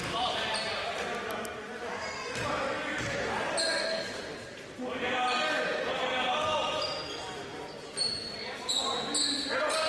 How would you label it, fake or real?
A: real